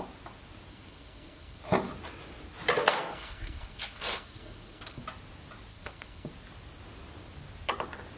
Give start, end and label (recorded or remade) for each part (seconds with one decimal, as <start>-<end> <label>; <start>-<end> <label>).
0.0-0.7 recorded; 0.7-1.6 remade; 1.6-2.8 recorded; 2.8-5.0 remade; 5.0-5.7 recorded; 5.7-6.3 remade; 6.3-8.2 recorded